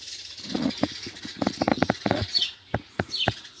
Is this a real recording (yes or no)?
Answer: no